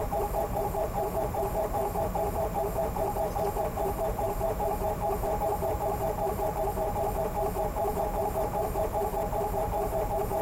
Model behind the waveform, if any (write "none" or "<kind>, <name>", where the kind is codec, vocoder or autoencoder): vocoder, BigVGAN v2